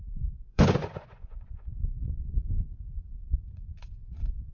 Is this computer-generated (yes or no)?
yes